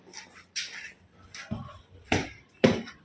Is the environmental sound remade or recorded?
remade